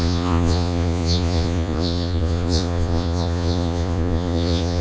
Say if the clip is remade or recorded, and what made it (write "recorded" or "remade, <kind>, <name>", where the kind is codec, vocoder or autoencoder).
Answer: remade, vocoder, Vocos